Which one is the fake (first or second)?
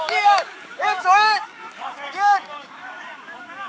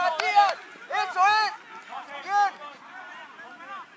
first